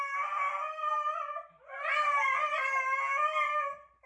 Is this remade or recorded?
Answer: recorded